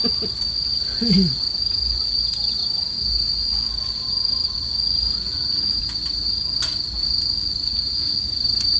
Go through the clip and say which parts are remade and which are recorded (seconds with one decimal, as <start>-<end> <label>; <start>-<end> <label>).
0.0-8.8 recorded